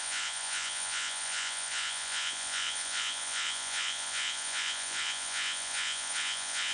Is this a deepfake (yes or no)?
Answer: yes